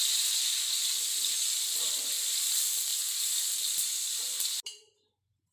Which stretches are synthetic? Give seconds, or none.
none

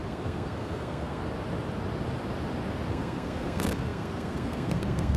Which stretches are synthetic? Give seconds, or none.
0.0-1.2 (codec, SNAC); 2.9-5.2

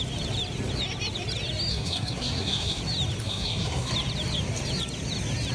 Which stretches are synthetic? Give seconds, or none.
1.7-2.8 (codec, SNAC); 3.2-3.9

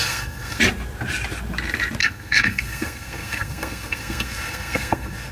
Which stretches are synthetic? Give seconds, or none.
0.0-0.6 (codec, SNAC); 2.0-5.3

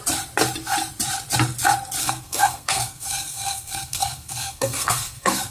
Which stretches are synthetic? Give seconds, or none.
2.0-5.5 (codec, SNAC)

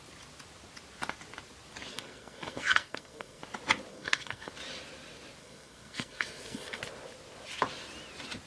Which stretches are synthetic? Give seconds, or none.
1.9-3.4 (codec, SNAC); 3.9-4.5; 5.4-6.8

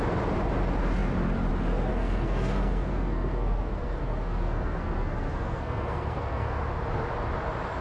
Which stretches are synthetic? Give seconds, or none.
1.9-6.6 (codec, SNAC)